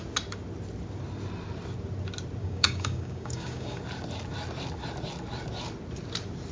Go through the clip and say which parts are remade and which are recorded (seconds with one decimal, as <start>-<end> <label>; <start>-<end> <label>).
0.0-2.4 recorded; 2.4-3.8 remade; 3.8-6.5 recorded